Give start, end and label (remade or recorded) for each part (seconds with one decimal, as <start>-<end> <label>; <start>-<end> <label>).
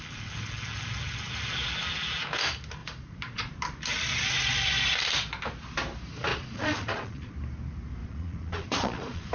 0.0-2.8 recorded; 2.8-3.5 remade; 3.5-6.3 recorded; 6.3-7.3 remade; 7.3-8.0 recorded; 8.0-9.3 remade